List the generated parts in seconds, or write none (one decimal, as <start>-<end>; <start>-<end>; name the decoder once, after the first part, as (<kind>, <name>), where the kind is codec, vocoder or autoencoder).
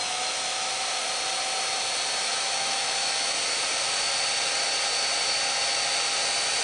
0.0-0.7 (autoencoder, DAC-VAE); 2.2-3.4